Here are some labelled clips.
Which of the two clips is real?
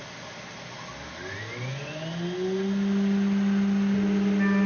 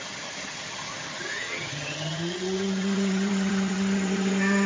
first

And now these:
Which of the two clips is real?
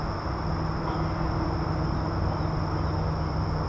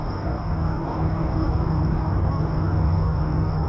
first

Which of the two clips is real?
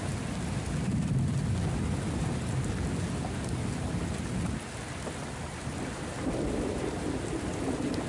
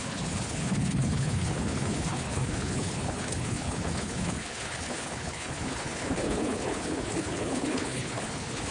first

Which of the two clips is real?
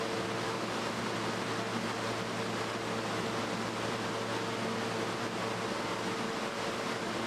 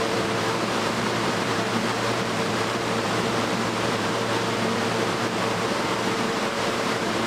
first